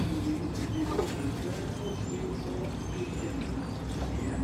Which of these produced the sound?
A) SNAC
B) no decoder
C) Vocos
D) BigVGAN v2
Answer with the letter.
D